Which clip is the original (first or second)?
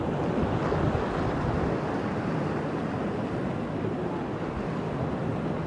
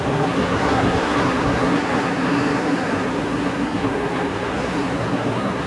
first